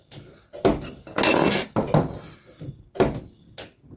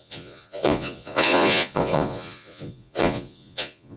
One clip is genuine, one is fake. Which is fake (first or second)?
second